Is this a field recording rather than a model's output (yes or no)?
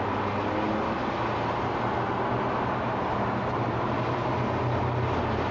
yes